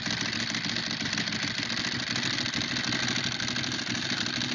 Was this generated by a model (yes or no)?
no